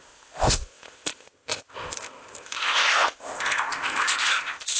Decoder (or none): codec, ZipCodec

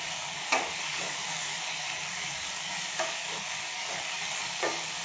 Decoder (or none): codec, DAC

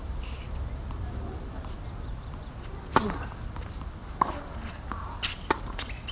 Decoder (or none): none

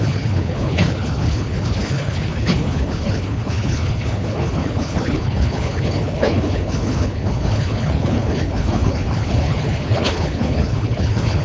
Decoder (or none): codec, HILCodec